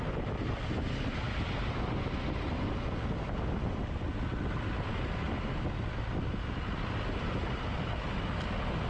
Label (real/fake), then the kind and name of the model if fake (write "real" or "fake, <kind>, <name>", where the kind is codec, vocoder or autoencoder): real